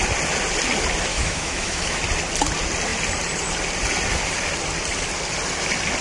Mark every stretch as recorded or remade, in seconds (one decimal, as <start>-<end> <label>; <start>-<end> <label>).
0.0-1.1 recorded; 1.1-2.0 remade; 2.0-6.0 recorded